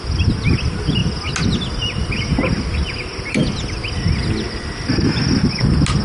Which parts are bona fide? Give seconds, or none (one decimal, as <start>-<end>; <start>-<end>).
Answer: 0.0-6.0